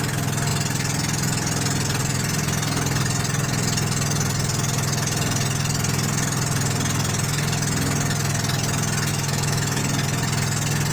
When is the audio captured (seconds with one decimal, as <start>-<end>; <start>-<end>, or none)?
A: 0.0-9.1; 9.8-10.9